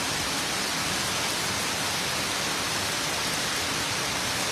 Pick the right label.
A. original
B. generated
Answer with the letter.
A